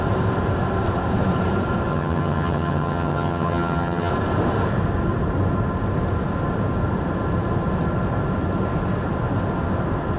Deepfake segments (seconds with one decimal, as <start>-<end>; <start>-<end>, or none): 1.9-4.1